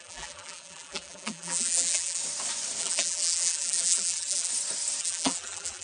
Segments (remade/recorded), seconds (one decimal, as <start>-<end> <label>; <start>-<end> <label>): 0.0-2.2 remade; 2.2-2.8 recorded; 2.8-4.5 remade; 4.5-5.0 recorded; 5.0-5.8 remade